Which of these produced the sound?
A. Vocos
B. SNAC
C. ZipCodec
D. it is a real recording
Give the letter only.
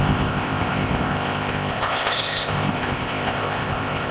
C